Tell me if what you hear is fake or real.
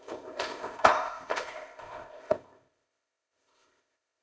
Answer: fake